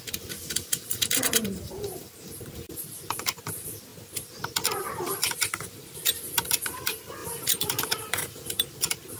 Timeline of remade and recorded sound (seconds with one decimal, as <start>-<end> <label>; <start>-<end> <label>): 0.0-3.9 remade; 3.9-4.5 recorded; 4.5-9.2 remade